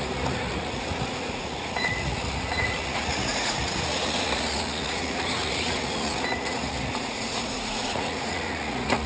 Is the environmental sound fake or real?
fake